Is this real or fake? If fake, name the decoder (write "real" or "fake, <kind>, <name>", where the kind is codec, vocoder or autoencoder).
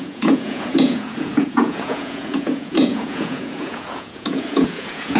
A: fake, vocoder, Vocos